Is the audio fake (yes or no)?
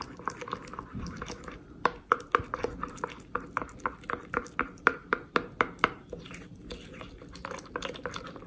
no